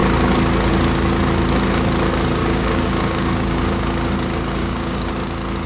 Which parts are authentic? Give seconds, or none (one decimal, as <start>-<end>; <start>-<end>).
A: 0.0-2.4; 3.8-4.6; 5.1-5.7